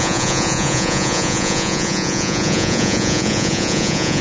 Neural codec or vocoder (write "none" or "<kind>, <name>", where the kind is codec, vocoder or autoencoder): vocoder, Vocos